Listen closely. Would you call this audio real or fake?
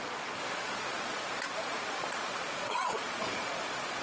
fake